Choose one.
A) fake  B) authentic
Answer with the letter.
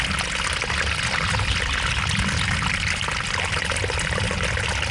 B